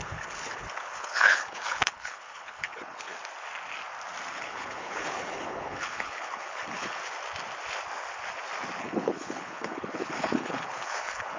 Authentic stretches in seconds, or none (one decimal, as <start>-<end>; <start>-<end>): 3.1-4.3; 7.0-8.8